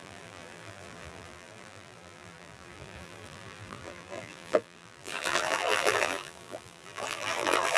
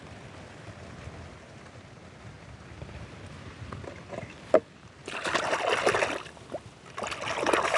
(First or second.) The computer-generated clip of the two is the first